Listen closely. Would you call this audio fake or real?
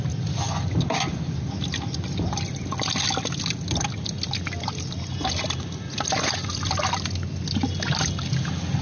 real